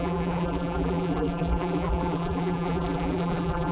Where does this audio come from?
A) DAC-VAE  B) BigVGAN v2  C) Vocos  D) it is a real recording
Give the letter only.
B